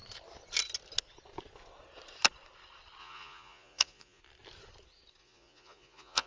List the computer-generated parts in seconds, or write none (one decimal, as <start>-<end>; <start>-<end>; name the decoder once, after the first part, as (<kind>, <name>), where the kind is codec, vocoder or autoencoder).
3.0-4.2 (vocoder, Vocos); 5.2-6.3